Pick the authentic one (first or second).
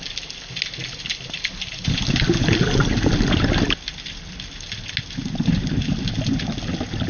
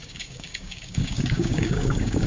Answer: first